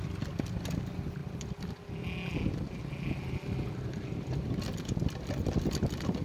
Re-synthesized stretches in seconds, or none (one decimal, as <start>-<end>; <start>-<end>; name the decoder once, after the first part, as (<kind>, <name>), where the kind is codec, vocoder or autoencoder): none